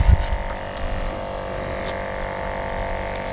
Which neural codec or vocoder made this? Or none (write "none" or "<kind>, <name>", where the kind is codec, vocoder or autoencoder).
none